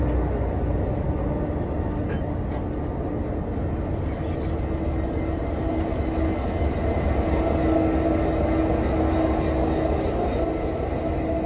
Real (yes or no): yes